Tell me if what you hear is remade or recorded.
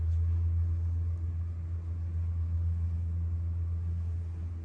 recorded